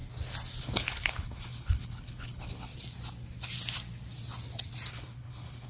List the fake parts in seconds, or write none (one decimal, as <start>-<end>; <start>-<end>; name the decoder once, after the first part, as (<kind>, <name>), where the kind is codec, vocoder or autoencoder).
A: 0.6-2.7 (codec, HILCodec); 4.9-5.7